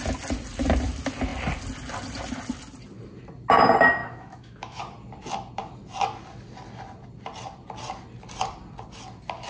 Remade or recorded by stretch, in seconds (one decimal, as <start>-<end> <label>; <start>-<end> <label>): 0.0-4.0 recorded; 4.0-4.8 remade; 4.8-9.5 recorded